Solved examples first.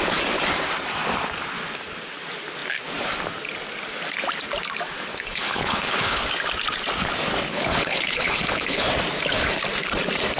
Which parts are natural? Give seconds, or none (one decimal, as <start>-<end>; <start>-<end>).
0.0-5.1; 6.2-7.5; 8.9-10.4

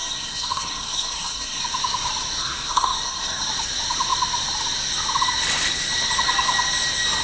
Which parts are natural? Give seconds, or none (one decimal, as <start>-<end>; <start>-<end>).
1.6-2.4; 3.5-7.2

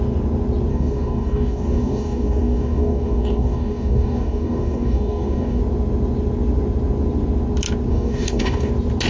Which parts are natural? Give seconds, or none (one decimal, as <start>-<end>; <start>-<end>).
0.0-0.7; 5.6-7.9; 8.7-9.1

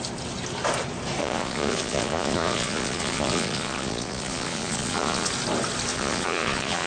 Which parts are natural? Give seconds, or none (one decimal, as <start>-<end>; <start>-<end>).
0.0-1.2; 5.3-5.9

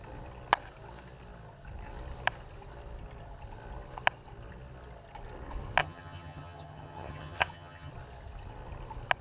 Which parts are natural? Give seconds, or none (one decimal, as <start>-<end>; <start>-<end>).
0.0-5.8; 7.9-9.2